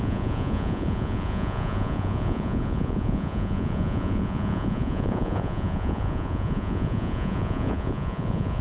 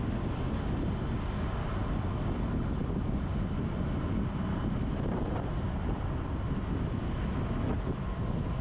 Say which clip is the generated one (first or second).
first